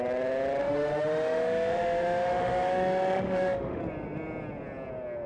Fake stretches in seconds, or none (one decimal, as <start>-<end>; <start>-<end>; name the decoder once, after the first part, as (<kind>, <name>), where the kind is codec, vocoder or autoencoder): 0.6-3.8 (autoencoder, DAC-VAE)